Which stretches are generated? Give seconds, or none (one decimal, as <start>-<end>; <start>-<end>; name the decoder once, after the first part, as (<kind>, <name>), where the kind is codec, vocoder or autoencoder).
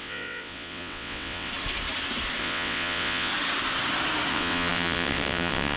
0.0-1.5 (vocoder, WaveNeXt); 2.4-3.3; 4.3-5.8